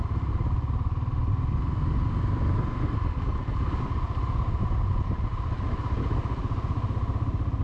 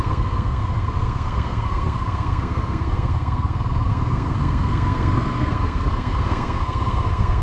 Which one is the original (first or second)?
first